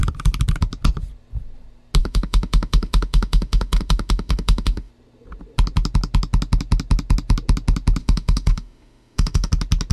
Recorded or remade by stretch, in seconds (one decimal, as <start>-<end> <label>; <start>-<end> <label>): 0.0-2.0 recorded; 2.0-4.9 remade; 4.9-8.0 recorded; 8.0-9.5 remade; 9.5-9.9 recorded